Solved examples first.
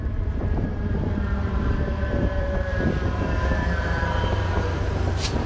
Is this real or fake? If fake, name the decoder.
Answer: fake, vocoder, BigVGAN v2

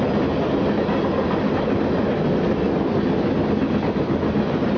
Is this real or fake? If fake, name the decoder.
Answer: real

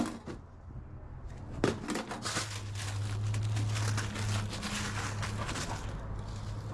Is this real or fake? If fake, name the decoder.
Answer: real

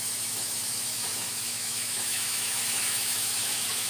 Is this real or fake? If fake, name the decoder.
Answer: fake, autoencoder, DAC-VAE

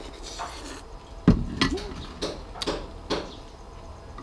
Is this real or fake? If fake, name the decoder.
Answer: real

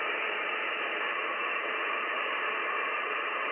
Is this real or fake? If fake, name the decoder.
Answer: fake, vocoder, BigVGAN v2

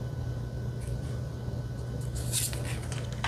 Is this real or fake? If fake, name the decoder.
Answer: real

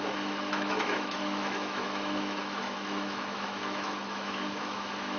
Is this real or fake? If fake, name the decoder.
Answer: fake, autoencoder, DAC-VAE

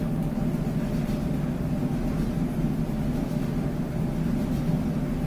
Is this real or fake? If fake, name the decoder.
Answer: real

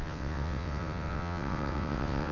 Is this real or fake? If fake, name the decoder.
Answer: fake, vocoder, WaveNeXt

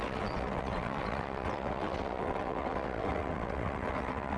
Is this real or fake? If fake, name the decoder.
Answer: fake, vocoder, WaveNeXt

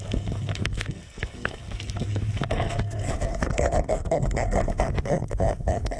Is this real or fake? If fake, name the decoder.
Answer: fake, codec, SNAC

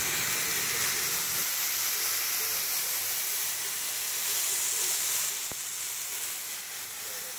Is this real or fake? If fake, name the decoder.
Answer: real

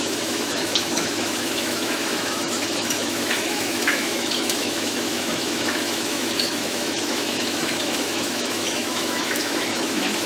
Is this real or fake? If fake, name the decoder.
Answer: fake, autoencoder, DAC-VAE